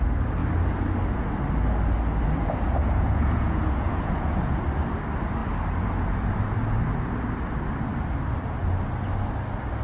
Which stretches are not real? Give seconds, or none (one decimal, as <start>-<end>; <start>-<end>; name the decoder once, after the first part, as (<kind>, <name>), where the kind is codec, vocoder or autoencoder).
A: 2.8-4.6 (vocoder, Vocos)